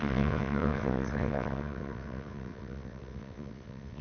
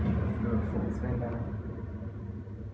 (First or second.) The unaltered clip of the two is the second